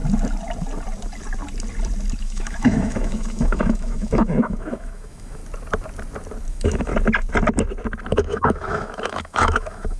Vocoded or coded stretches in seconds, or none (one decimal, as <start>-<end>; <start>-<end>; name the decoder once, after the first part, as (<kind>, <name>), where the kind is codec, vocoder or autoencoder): 2.2-5.4 (autoencoder, DAC-VAE); 6.5-6.9; 8.1-10.0